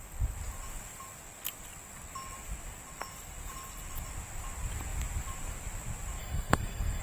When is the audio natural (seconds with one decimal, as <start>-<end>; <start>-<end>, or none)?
0.0-6.2